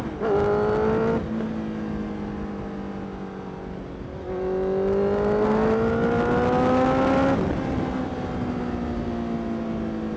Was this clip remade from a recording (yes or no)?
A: no